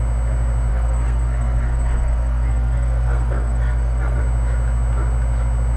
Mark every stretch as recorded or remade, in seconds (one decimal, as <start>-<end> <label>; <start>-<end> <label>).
0.0-0.7 recorded; 0.7-4.2 remade; 4.2-5.8 recorded